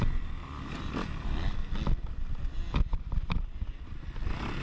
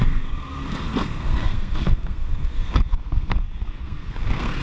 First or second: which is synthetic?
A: second